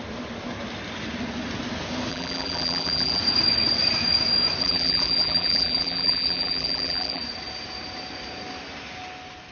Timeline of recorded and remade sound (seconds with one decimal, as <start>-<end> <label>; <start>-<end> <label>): 0.0-2.1 recorded; 2.1-3.2 remade; 3.2-4.6 recorded; 4.6-7.2 remade; 7.2-9.5 recorded